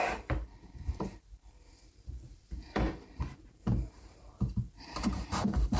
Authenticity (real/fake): fake